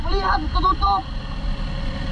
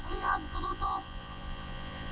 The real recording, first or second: first